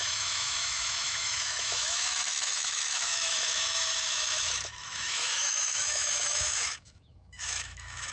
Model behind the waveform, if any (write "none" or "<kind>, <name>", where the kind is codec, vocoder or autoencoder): autoencoder, DAC-VAE